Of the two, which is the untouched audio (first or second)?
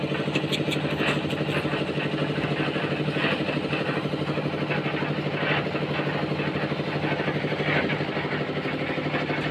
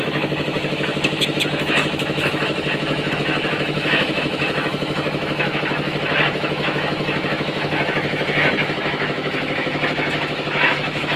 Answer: first